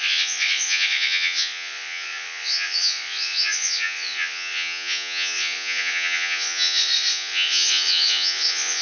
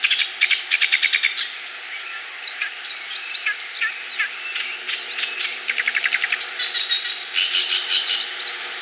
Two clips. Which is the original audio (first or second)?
second